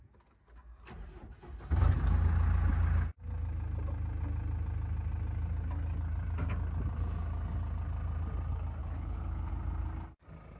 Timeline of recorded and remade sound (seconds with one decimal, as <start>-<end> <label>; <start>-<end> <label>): 0.0-8.8 recorded; 8.8-9.5 remade; 9.5-10.6 recorded